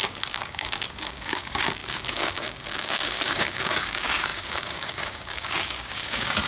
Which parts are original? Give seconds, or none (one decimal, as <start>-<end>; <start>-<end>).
none